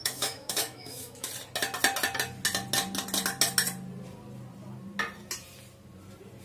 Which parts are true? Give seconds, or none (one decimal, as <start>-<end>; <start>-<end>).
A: 1.3-6.4